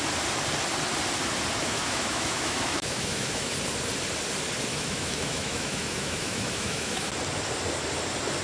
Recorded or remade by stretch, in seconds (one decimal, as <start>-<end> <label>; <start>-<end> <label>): 0.0-1.6 recorded; 1.6-3.5 remade; 3.5-4.7 recorded; 4.7-7.1 remade; 7.1-8.4 recorded